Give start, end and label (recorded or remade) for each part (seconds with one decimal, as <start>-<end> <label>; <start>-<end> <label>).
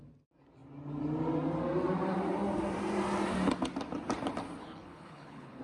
0.0-4.6 recorded; 4.6-5.6 remade